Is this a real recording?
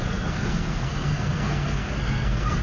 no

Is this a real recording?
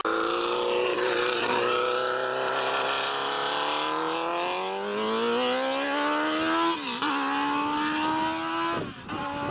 yes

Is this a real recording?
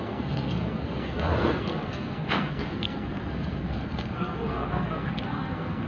no